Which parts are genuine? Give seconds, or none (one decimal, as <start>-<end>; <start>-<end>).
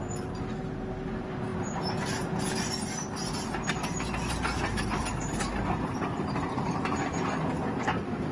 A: 0.0-8.3